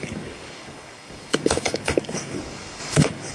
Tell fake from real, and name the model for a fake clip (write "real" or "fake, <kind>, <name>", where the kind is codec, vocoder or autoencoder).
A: fake, codec, DAC